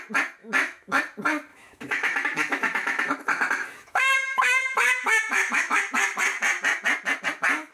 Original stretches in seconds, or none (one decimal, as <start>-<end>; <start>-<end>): 0.0-0.4; 1.0-1.5; 5.8-7.7